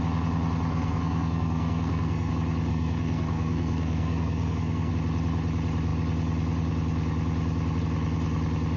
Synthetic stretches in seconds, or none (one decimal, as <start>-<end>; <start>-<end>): 0.7-2.3; 2.7-4.9